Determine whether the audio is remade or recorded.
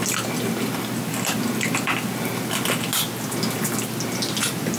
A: recorded